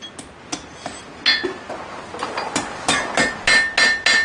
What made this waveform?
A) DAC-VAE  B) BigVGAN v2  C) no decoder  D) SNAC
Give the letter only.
C